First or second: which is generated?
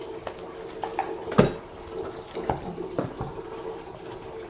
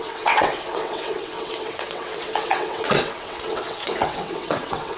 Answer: second